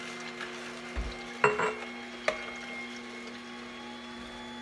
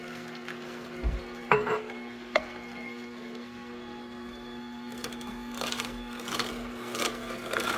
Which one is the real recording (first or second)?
first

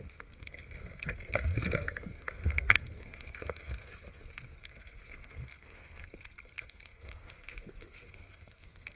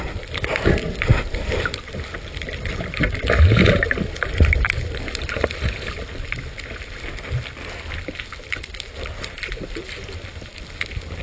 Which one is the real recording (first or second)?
second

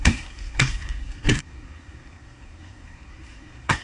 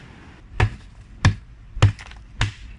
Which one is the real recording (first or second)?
second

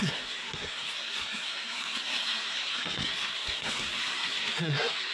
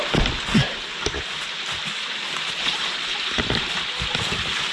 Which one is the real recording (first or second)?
second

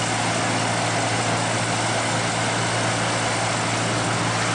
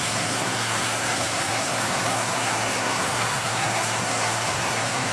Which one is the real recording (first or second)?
first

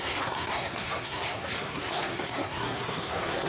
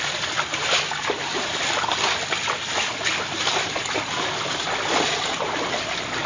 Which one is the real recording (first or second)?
second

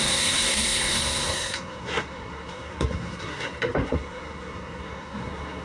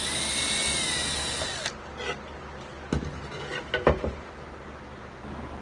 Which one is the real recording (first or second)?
second